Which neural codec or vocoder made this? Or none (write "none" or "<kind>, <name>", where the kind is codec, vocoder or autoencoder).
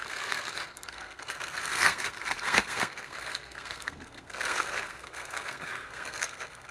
codec, SNAC